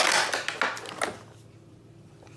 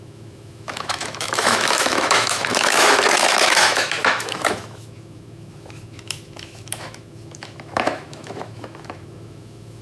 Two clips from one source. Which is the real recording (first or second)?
first